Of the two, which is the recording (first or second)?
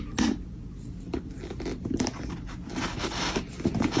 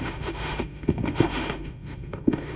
first